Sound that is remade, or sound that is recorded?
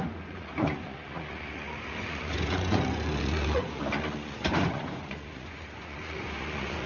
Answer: remade